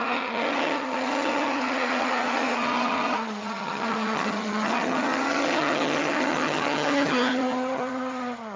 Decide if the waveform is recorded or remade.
remade